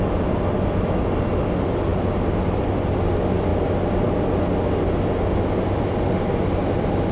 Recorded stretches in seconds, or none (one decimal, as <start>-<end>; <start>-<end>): 0.0-7.1

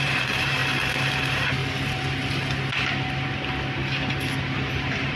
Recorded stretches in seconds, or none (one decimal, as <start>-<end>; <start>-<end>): 0.6-1.2; 1.6-4.7

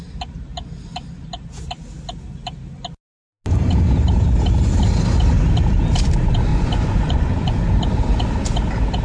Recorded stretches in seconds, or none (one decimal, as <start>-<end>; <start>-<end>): 0.0-6.5; 7.6-9.0

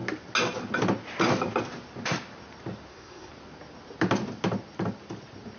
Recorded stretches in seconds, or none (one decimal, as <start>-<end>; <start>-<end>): 0.0-2.9; 3.3-5.6

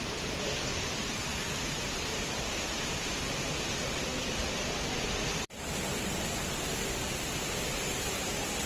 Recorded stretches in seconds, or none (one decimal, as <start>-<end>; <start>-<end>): 1.3-2.8; 4.1-8.7

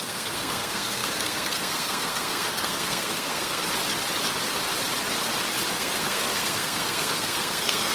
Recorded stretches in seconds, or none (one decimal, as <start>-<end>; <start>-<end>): 3.6-5.7